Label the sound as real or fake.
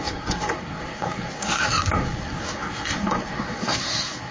fake